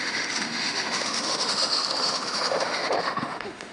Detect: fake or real fake